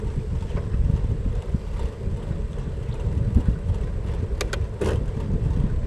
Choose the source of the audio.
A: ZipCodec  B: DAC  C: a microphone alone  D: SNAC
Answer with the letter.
C